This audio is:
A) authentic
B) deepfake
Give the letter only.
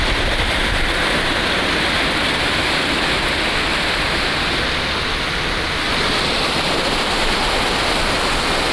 A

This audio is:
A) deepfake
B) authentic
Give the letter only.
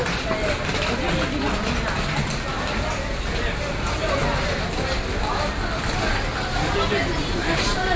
B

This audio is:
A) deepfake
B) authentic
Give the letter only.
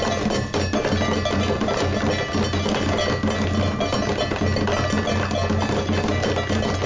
B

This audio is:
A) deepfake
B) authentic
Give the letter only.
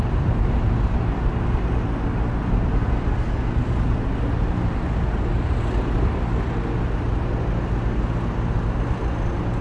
B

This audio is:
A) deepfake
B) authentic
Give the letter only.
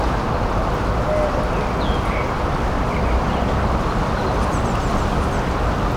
B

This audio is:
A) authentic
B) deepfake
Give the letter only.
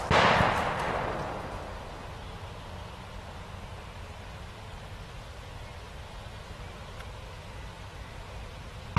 A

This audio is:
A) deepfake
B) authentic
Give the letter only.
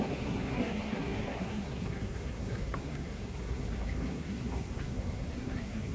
A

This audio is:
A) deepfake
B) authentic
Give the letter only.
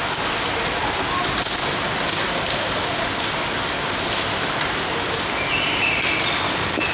B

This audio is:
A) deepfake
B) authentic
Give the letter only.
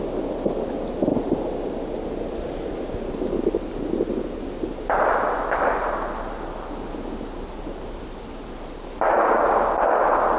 B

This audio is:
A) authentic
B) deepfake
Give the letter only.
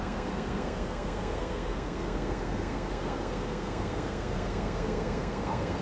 B